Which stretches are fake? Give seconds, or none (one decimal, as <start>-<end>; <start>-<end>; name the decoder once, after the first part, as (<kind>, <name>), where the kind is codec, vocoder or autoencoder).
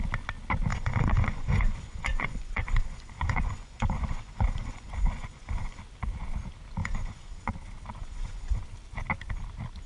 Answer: 0.7-5.8 (vocoder, Vocos); 6.8-7.5; 8.0-8.6